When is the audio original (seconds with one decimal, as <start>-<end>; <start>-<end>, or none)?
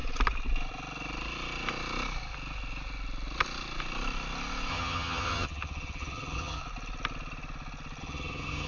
0.0-4.7; 6.6-8.0